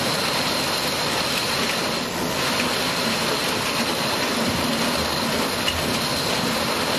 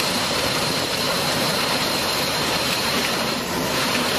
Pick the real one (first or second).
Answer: first